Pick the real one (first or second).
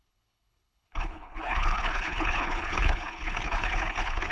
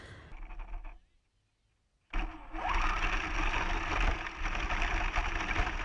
second